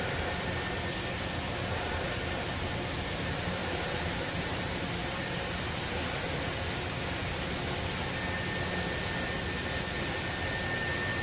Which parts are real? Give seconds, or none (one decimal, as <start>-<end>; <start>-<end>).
0.0-3.6; 6.4-11.2